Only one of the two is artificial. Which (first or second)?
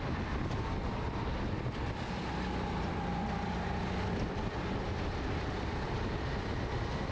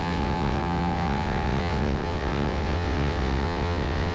second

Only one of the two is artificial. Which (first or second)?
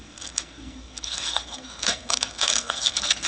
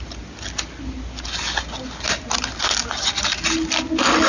first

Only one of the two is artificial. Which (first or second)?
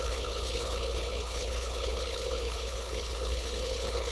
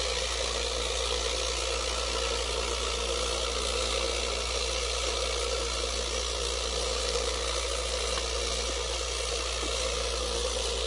first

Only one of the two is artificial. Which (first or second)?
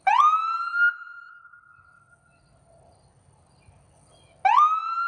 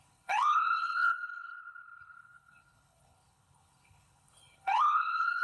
second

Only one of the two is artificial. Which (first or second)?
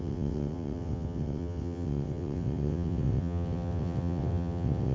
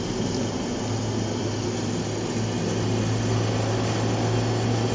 first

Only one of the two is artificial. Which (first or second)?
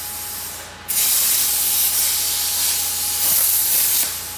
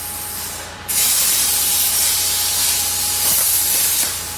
second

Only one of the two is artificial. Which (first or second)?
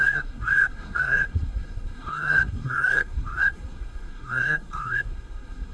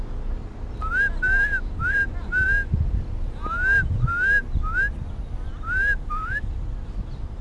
first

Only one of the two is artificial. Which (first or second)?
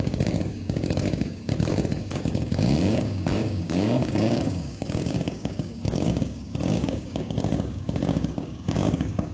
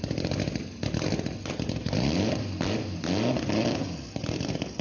first